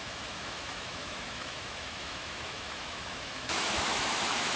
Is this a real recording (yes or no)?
no